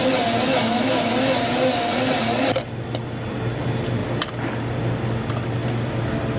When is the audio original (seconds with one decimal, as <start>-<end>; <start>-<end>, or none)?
0.0-0.6; 1.1-6.4

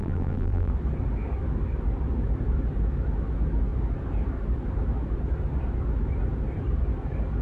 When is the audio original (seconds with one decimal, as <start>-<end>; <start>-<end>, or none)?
0.7-7.4

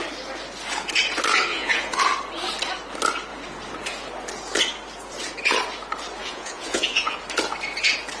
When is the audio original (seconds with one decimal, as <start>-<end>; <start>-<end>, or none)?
0.0-1.5; 2.0-6.2; 7.2-8.2

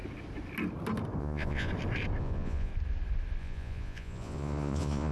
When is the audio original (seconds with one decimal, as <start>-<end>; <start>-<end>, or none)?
0.0-1.2; 1.7-2.2; 2.7-3.4

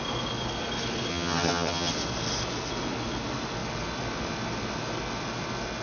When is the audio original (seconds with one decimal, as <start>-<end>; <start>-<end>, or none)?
0.0-1.1; 1.9-5.8